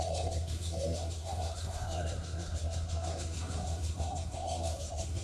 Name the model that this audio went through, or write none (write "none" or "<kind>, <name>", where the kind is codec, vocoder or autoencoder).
codec, SNAC